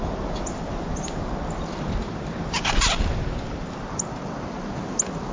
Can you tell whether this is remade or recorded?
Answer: recorded